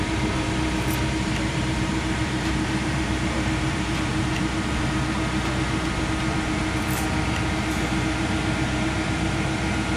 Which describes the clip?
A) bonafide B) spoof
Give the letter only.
B